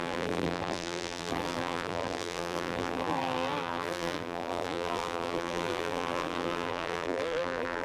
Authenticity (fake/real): fake